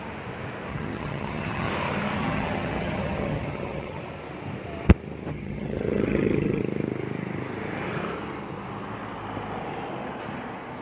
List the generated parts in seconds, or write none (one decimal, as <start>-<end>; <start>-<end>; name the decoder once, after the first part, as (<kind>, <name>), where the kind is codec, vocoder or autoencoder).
0.7-1.7 (vocoder, HiFi-GAN); 2.2-4.0; 5.3-6.6

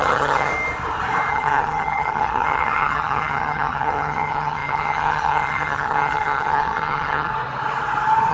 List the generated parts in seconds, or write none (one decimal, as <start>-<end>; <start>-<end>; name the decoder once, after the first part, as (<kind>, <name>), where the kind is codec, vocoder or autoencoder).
0.0-0.5 (vocoder, HiFi-GAN); 1.3-7.3

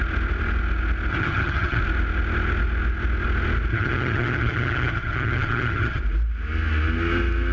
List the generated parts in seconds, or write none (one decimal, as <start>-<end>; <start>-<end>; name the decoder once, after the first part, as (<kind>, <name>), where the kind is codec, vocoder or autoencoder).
1.1-1.8 (vocoder, HiFi-GAN); 3.7-6.0

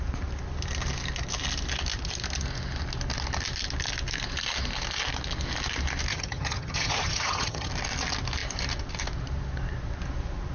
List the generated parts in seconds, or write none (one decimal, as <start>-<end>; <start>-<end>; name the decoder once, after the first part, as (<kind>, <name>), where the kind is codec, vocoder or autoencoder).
6.1-7.7 (vocoder, HiFi-GAN)

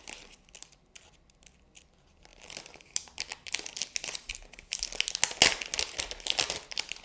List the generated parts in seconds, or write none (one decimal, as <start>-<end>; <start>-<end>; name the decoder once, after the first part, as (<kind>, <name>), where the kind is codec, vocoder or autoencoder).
none

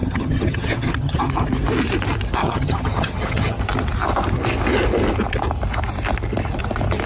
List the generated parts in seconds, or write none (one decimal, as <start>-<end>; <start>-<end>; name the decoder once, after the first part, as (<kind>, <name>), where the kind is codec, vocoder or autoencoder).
0.0-1.3 (vocoder, HiFi-GAN); 2.4-3.6

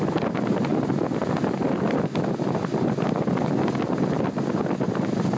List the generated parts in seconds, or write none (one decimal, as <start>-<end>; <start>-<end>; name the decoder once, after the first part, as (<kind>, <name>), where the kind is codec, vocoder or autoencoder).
none

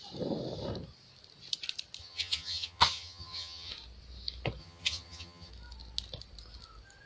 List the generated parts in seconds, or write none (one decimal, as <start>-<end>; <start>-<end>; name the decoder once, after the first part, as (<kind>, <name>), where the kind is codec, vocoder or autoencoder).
2.0-3.7 (vocoder, HiFi-GAN); 4.6-5.5